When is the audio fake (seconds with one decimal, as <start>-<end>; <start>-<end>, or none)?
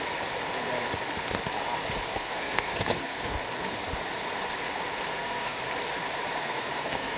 2.1-3.4; 5.1-5.6; 6.4-7.2